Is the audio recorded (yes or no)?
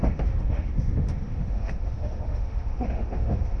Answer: no